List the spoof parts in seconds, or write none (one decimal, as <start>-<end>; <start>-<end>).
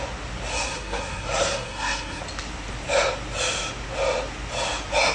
0.5-2.2